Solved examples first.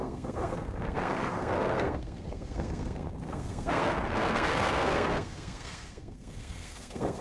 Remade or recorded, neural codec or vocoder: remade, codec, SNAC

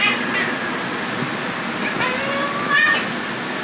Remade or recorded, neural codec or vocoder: recorded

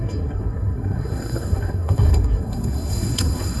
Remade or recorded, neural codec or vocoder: remade, codec, SNAC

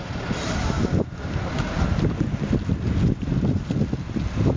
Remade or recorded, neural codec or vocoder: recorded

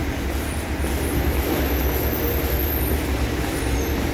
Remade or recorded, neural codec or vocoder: recorded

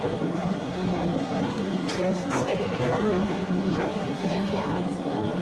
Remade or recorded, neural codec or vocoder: remade, codec, SNAC